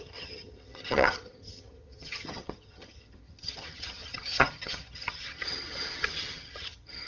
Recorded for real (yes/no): no